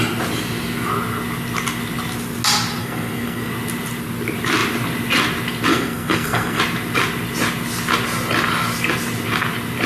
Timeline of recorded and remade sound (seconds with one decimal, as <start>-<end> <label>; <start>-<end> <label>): 0.0-2.8 recorded; 2.8-3.5 remade; 3.5-5.7 recorded; 5.7-6.6 remade; 6.6-9.9 recorded